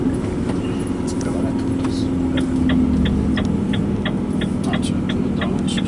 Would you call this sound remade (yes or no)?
no